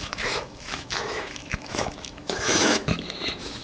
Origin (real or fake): fake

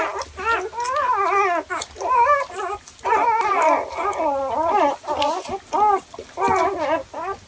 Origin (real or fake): real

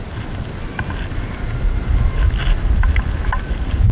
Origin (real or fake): real